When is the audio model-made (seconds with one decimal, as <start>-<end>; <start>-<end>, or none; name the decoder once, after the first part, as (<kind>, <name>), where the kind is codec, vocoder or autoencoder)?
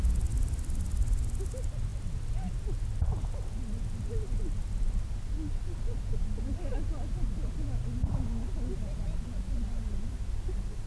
none